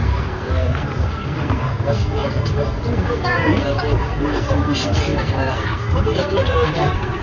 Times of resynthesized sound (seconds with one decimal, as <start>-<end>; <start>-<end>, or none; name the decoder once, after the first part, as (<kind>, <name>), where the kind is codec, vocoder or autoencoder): 0.0-7.2 (codec, SNAC)